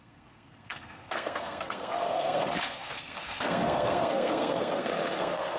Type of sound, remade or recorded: remade